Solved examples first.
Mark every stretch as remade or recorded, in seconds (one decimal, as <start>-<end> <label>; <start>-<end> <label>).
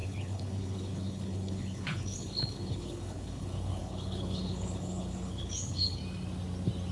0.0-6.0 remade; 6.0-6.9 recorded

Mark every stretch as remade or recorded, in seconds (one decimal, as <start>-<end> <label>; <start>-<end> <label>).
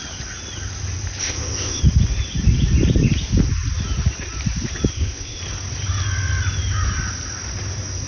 0.0-1.2 recorded; 1.2-1.8 remade; 1.8-4.9 recorded; 4.9-5.4 remade; 5.4-8.1 recorded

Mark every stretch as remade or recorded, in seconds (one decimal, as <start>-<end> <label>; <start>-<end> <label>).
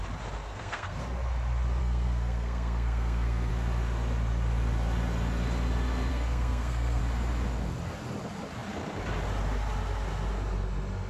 0.0-0.5 recorded; 0.5-1.0 remade; 1.0-1.8 recorded; 1.8-3.5 remade; 3.5-6.1 recorded; 6.1-7.0 remade; 7.0-11.1 recorded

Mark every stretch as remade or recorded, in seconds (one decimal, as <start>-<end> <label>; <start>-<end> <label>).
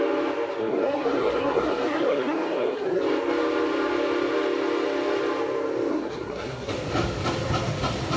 0.0-0.6 recorded; 0.6-3.0 remade; 3.0-5.9 recorded; 5.9-6.7 remade; 6.7-8.2 recorded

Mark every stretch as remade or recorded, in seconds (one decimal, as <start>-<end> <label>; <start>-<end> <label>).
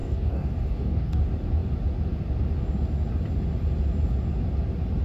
0.0-1.2 remade; 1.2-5.0 recorded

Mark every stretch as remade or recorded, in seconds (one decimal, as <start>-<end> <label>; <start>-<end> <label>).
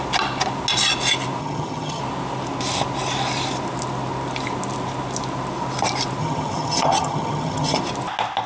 0.0-1.4 recorded; 1.4-2.0 remade; 2.0-6.2 recorded; 6.2-7.8 remade; 7.8-8.5 recorded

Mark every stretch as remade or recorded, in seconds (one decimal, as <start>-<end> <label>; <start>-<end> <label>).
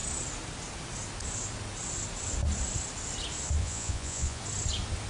0.0-3.6 recorded; 3.6-4.4 remade; 4.4-5.1 recorded